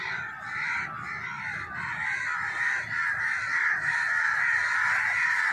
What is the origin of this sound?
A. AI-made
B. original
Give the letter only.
B